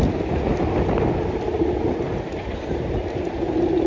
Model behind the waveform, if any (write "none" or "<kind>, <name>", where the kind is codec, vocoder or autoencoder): none